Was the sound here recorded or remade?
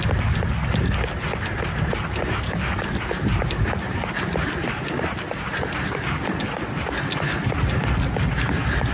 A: recorded